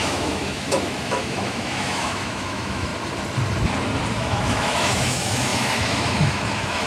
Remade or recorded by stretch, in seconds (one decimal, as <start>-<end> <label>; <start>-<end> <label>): 0.0-2.9 remade; 2.9-4.1 recorded; 4.1-6.9 remade